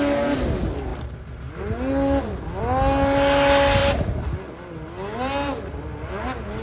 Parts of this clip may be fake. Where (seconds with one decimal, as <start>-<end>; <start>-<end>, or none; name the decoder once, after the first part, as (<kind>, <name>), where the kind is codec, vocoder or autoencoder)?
none